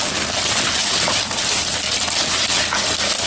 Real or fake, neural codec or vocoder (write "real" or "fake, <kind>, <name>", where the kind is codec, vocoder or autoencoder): real